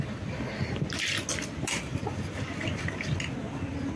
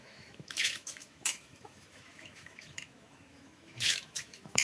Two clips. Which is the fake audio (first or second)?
second